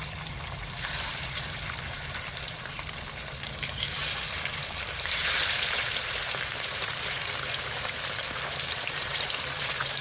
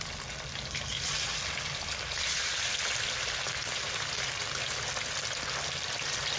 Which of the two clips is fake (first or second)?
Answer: first